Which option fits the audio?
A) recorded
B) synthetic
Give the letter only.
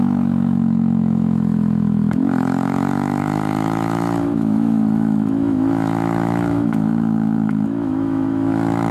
B